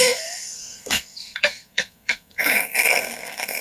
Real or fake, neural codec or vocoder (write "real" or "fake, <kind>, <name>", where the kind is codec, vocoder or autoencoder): fake, codec, SNAC